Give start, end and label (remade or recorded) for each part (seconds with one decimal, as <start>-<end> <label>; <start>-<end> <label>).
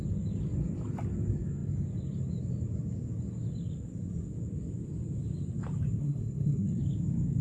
0.0-6.0 recorded; 6.0-6.8 remade; 6.8-7.4 recorded